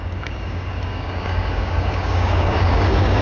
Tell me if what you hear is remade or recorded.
remade